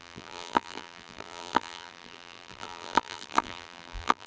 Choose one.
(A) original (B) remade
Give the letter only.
B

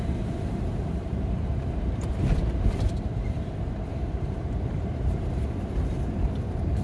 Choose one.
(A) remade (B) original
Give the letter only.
A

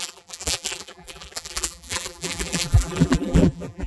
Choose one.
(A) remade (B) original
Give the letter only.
A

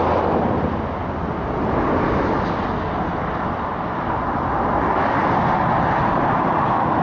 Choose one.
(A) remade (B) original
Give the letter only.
B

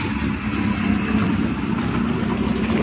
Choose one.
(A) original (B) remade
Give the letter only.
A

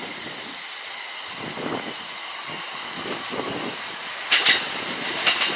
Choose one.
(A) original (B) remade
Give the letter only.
A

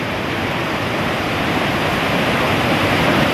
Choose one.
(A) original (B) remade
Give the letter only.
A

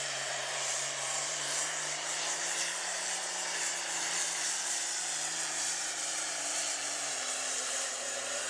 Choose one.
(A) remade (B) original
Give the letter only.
A